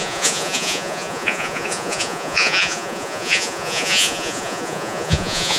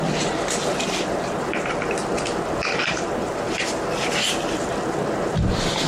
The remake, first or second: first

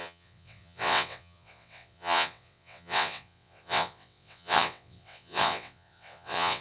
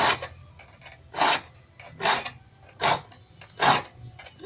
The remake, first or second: first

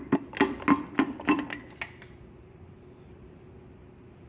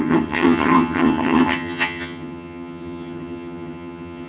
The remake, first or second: second